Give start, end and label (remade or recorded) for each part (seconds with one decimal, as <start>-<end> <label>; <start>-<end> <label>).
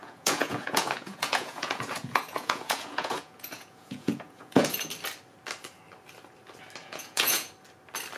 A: 0.0-4.9 remade; 4.9-6.8 recorded; 6.8-7.5 remade; 7.5-8.2 recorded